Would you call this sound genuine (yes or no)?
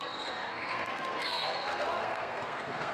no